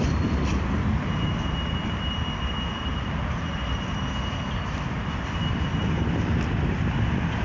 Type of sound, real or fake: real